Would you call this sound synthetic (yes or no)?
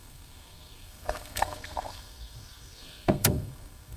yes